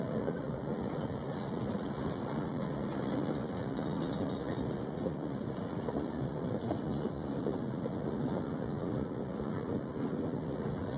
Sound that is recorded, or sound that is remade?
remade